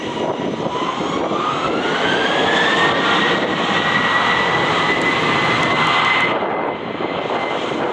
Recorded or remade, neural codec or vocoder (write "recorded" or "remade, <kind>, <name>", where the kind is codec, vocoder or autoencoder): recorded